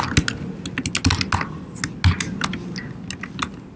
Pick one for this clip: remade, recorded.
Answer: recorded